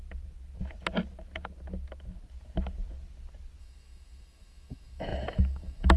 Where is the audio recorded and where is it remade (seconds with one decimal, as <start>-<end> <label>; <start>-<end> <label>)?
0.0-3.6 recorded; 3.6-6.0 remade